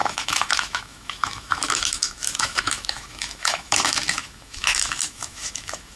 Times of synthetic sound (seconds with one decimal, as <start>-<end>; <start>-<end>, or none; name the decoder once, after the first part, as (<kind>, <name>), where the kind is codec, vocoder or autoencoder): 0.0-6.0 (autoencoder, DAC-VAE)